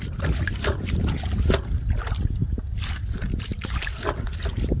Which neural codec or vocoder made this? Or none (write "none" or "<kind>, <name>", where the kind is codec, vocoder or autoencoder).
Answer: none